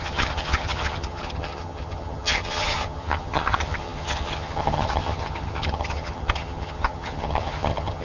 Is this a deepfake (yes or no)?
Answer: yes